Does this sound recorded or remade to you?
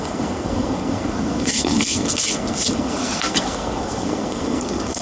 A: remade